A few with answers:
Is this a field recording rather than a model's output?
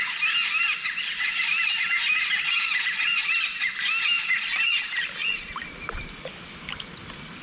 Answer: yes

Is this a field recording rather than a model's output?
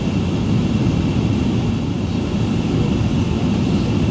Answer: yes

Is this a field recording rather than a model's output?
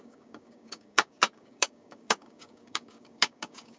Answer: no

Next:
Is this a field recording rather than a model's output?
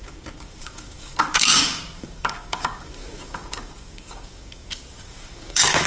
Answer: no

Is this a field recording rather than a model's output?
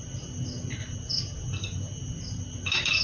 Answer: yes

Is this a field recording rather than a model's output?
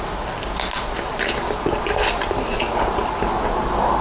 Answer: yes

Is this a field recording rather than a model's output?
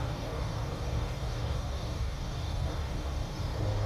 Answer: no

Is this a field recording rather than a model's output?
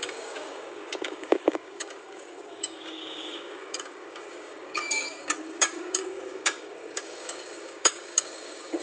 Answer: no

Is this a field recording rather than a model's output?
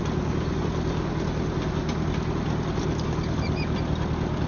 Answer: yes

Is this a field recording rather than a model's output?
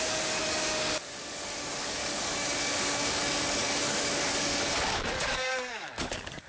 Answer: no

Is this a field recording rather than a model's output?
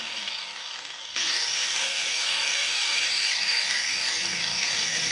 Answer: no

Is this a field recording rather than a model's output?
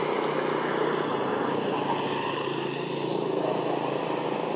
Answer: yes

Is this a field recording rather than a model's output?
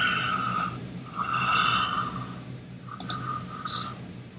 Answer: yes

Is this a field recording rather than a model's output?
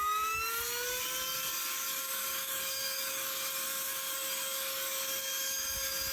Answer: no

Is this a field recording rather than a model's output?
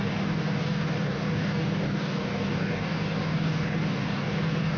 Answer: no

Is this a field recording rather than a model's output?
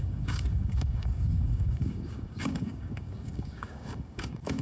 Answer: no